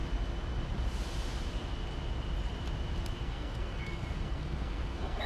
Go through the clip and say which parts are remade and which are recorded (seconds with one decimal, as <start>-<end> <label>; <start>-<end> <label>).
0.0-3.2 recorded; 3.2-5.3 remade